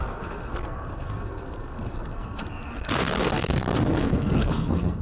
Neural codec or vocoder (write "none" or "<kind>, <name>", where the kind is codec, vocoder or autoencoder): codec, SNAC